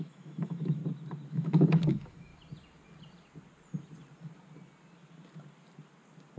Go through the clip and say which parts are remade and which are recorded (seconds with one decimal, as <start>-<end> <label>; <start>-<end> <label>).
0.0-0.8 remade; 0.8-1.3 recorded; 1.3-2.3 remade; 2.3-6.4 recorded